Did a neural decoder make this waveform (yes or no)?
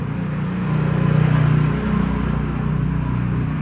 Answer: no